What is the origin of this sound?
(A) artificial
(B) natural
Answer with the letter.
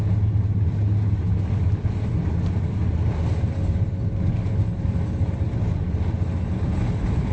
B